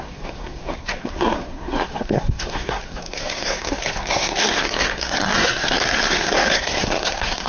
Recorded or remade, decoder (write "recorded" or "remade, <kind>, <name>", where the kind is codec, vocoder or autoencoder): remade, codec, SNAC